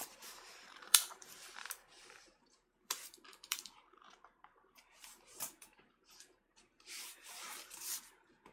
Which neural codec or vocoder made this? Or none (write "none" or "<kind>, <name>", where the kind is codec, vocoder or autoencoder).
vocoder, BigVGAN v2